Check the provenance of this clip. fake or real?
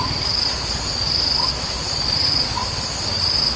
real